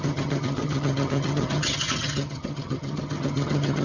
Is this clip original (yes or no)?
no